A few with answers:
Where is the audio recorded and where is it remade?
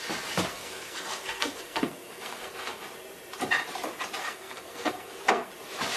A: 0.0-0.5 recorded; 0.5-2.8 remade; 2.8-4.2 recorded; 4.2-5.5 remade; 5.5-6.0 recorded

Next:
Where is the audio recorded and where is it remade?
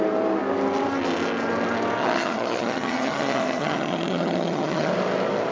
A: 0.0-2.0 recorded; 2.0-4.9 remade; 4.9-5.5 recorded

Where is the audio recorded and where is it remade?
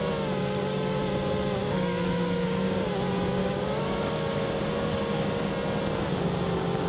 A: 0.0-0.4 recorded; 0.4-1.0 remade; 1.0-1.6 recorded; 1.6-2.9 remade; 2.9-3.4 recorded; 3.4-5.5 remade; 5.5-6.9 recorded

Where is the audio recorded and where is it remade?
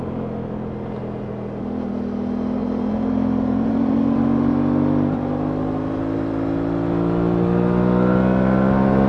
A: 0.0-2.6 recorded; 2.6-4.5 remade; 4.5-9.1 recorded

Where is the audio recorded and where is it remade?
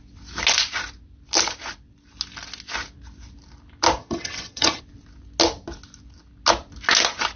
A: 0.0-4.0 recorded; 4.0-4.8 remade; 4.8-7.4 recorded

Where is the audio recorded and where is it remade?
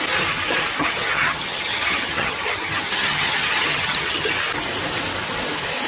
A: 0.0-0.8 recorded; 0.8-4.3 remade; 4.3-5.9 recorded